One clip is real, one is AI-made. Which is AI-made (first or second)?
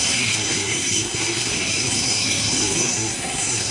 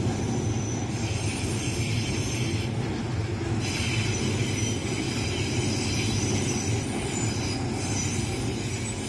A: first